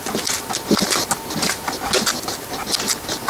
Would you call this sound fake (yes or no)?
no